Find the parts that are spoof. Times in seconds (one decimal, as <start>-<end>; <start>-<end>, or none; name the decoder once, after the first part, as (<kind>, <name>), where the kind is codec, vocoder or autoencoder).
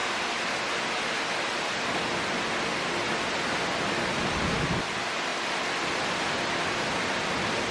none